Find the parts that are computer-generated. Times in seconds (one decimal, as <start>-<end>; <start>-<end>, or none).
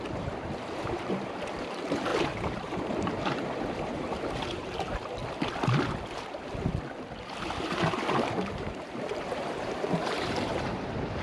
0.0-5.2; 8.1-11.2